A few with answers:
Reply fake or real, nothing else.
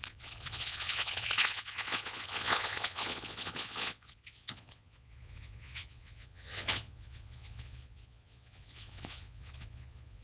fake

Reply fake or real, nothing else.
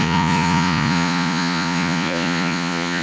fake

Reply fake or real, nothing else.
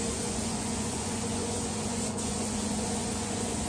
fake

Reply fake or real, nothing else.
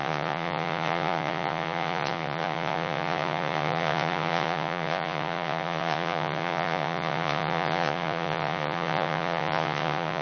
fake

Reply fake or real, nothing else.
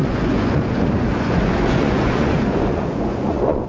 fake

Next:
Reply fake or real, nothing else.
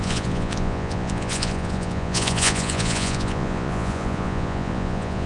fake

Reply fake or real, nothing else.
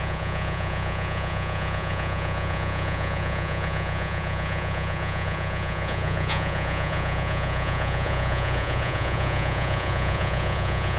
fake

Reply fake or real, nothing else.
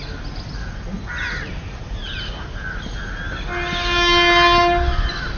real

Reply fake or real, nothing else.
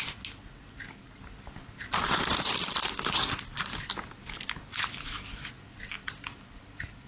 real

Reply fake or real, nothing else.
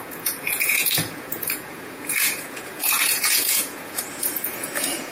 fake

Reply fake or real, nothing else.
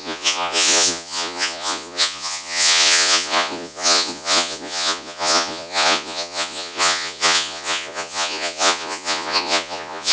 fake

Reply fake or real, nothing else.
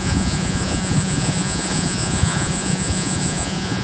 fake